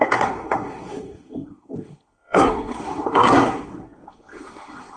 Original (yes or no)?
no